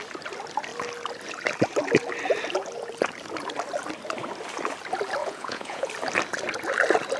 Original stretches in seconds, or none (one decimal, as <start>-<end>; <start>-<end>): 0.0-5.2; 5.9-7.2